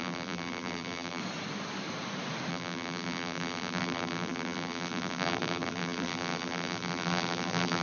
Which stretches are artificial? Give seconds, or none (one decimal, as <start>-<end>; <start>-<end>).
0.0-1.2; 2.5-7.8